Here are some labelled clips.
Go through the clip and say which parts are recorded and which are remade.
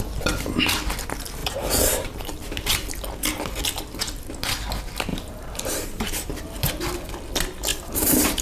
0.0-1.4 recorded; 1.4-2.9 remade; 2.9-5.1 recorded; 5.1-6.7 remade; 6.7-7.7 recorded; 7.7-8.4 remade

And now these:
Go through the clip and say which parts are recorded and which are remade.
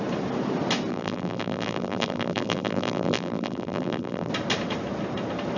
0.0-0.9 recorded; 0.9-4.3 remade; 4.3-5.6 recorded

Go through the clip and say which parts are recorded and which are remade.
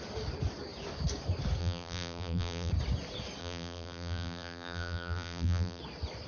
0.0-1.6 recorded; 1.6-2.7 remade; 2.7-3.4 recorded; 3.4-5.8 remade; 5.8-6.3 recorded